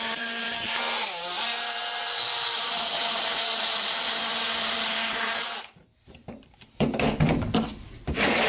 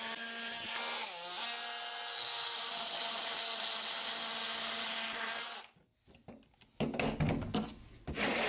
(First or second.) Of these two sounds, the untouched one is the second